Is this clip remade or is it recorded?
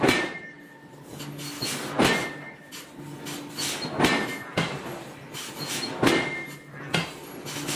recorded